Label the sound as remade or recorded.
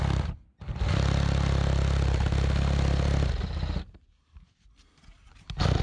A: recorded